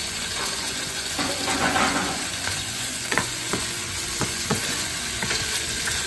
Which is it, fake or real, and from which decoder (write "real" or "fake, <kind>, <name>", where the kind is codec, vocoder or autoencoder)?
fake, vocoder, Vocos